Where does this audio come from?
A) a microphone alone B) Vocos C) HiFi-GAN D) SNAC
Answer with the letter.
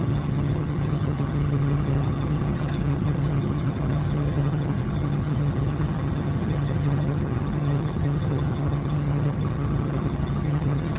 C